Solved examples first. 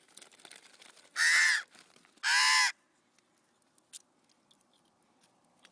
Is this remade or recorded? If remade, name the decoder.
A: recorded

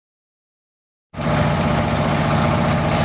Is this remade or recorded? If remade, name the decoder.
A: recorded